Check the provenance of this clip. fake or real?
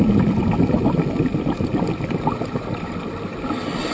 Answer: real